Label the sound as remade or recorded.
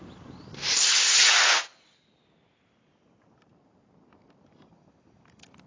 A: recorded